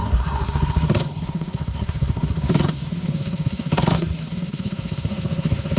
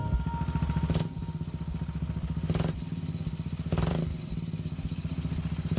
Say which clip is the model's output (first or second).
first